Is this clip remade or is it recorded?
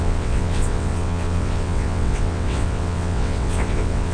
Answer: remade